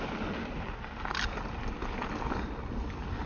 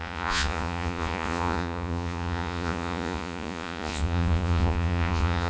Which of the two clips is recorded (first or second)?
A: first